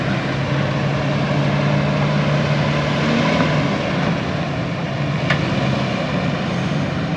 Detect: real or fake real